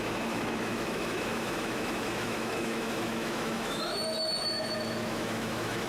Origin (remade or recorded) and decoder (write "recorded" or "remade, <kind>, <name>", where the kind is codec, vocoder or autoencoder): remade, autoencoder, DAC-VAE